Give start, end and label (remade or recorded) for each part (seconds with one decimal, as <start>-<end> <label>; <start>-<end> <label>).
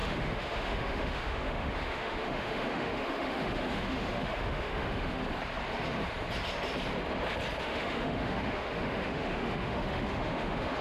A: 0.0-5.2 remade; 5.2-7.6 recorded; 7.6-10.8 remade